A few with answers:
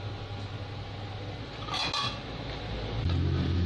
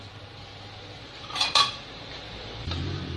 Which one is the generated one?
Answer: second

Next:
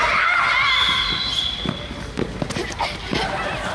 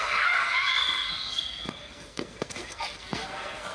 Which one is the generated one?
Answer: second